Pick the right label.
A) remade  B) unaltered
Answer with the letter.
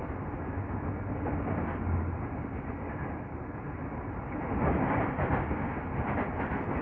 B